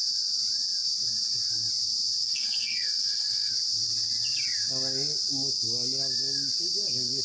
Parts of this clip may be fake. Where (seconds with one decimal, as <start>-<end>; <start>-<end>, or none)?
2.2-3.5